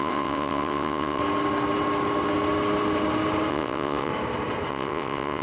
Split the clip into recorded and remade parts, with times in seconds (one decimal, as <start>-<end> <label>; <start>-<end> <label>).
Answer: 0.0-1.2 remade; 1.2-3.5 recorded; 3.5-4.1 remade; 4.1-4.7 recorded; 4.7-5.4 remade